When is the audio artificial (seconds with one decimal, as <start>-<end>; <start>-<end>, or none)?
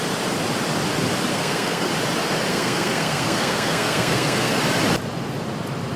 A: 1.3-1.9; 2.5-4.6